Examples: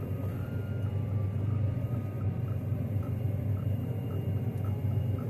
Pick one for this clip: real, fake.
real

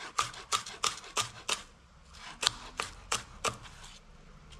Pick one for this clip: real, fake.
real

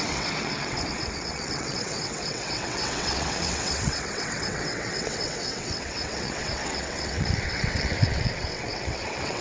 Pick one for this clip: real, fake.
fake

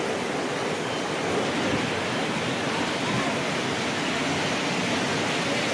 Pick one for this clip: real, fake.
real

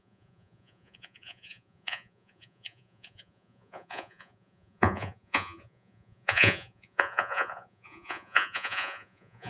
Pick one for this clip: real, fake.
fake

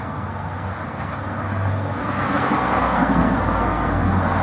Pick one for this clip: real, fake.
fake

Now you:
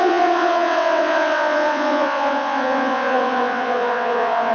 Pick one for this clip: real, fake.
fake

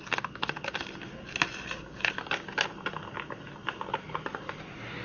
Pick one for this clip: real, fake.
real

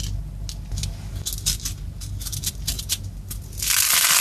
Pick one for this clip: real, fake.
real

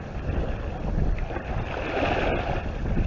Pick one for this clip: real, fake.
real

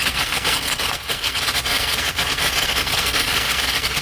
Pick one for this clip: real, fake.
fake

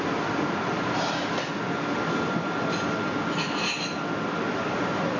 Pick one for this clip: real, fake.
real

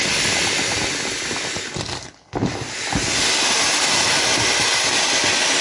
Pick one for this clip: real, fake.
real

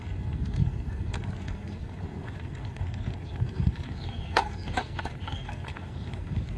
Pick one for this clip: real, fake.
fake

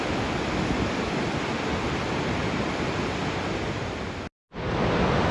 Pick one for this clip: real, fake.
real